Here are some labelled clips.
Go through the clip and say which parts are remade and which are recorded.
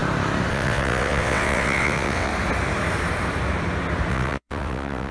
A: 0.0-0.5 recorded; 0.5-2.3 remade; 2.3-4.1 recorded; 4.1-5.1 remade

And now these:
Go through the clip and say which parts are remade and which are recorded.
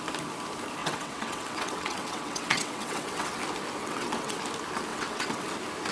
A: 0.0-0.8 recorded; 0.8-3.4 remade; 3.4-3.8 recorded; 3.8-4.4 remade; 4.4-4.9 recorded; 4.9-5.5 remade; 5.5-5.9 recorded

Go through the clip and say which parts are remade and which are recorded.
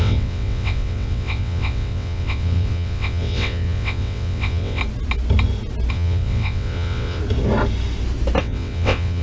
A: 0.0-4.8 remade; 4.8-5.9 recorded; 5.9-7.2 remade; 7.2-8.4 recorded; 8.4-9.2 remade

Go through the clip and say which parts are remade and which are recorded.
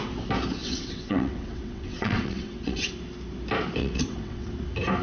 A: 0.0-0.6 recorded; 0.6-2.9 remade; 2.9-3.8 recorded; 3.8-4.5 remade; 4.5-5.0 recorded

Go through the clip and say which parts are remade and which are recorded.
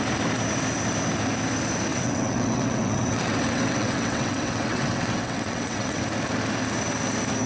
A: 0.0-1.9 recorded; 1.9-6.0 remade; 6.0-7.5 recorded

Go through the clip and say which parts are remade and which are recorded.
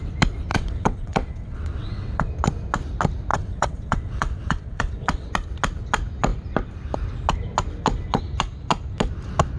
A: 0.0-0.5 recorded; 0.5-2.3 remade; 2.3-3.3 recorded; 3.3-5.3 remade; 5.3-9.6 recorded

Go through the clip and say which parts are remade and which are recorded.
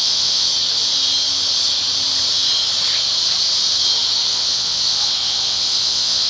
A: 0.0-0.5 remade; 0.5-4.3 recorded; 4.3-6.3 remade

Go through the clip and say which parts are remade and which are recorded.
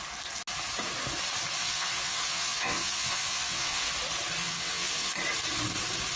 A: 0.0-1.6 recorded; 1.6-3.9 remade; 3.9-4.4 recorded; 4.4-5.1 remade; 5.1-6.2 recorded